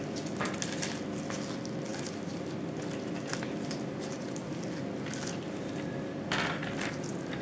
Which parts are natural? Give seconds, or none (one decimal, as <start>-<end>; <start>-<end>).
0.0-7.4